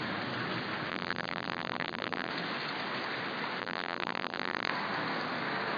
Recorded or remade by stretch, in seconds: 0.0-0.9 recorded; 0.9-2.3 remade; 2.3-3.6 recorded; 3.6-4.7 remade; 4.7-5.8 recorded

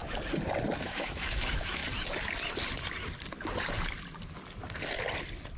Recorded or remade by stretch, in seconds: 0.0-0.8 recorded; 0.8-1.8 remade; 1.8-5.6 recorded

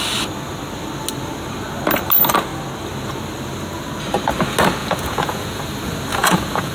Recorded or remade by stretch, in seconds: 0.0-4.8 recorded; 4.8-5.6 remade; 5.6-6.1 recorded; 6.1-6.7 remade

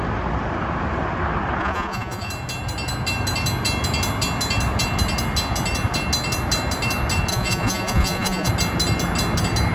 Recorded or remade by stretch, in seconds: 0.0-1.6 recorded; 1.6-2.3 remade; 2.3-7.3 recorded; 7.3-8.5 remade; 8.5-9.7 recorded

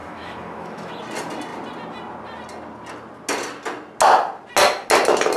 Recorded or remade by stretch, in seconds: 0.0-0.9 remade; 0.9-5.4 recorded

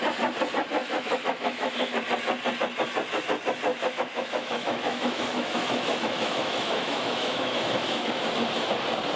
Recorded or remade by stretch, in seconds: 0.0-0.8 recorded; 0.8-2.0 remade; 2.0-3.7 recorded; 3.7-8.2 remade; 8.2-9.2 recorded

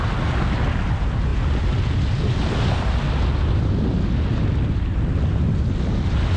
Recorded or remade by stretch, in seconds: 0.0-6.4 recorded

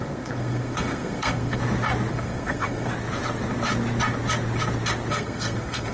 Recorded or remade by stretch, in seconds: 0.0-1.6 remade; 1.6-2.1 recorded; 2.1-2.9 remade; 2.9-5.1 recorded; 5.1-5.9 remade